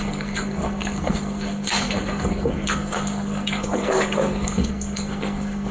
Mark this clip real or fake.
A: fake